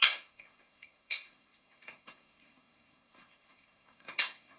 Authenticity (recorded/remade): remade